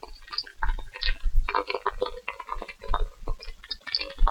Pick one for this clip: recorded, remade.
recorded